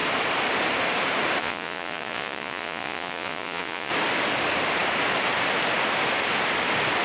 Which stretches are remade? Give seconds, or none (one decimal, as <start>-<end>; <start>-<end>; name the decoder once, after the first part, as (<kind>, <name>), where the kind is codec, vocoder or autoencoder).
1.4-3.9 (vocoder, Vocos)